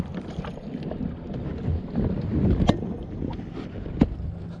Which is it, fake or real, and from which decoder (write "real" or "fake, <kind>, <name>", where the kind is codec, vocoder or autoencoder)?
real